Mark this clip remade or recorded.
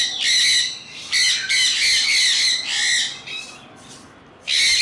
recorded